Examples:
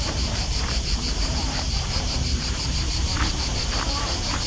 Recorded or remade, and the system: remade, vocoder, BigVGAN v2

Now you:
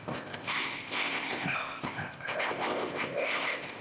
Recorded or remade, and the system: remade, codec, ZipCodec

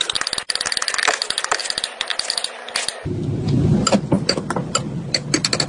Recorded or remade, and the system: recorded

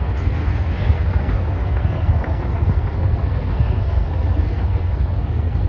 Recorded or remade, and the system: remade, codec, SNAC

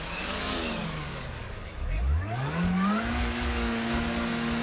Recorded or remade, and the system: remade, codec, DAC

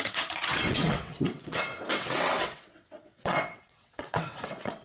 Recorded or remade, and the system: remade, vocoder, WaveNeXt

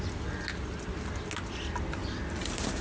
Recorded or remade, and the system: recorded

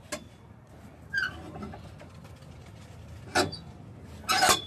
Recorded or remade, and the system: recorded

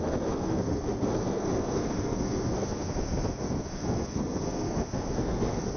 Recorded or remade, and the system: remade, codec, SNAC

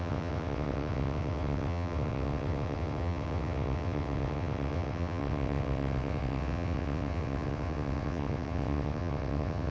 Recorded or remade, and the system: remade, vocoder, WaveNeXt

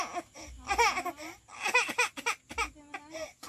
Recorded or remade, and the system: recorded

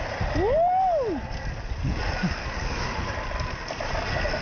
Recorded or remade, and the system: recorded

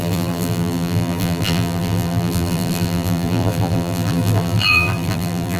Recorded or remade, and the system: remade, vocoder, BigVGAN v2